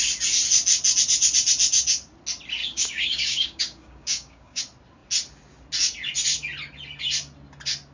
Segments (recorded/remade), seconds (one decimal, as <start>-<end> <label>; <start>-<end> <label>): 0.0-2.6 recorded; 2.6-4.6 remade; 4.6-7.9 recorded